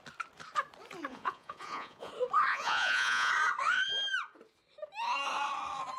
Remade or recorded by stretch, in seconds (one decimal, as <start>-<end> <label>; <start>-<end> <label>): 0.0-1.1 recorded; 1.1-2.1 remade; 2.1-2.5 recorded; 2.5-3.3 remade; 3.3-6.0 recorded